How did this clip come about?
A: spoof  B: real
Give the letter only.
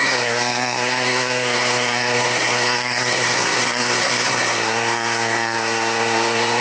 A